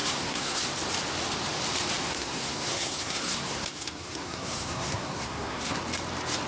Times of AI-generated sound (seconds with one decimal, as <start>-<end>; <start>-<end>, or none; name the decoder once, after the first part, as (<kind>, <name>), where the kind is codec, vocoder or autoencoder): 0.0-0.6 (codec, SNAC); 2.0-5.8